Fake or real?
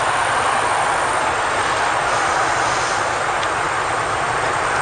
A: real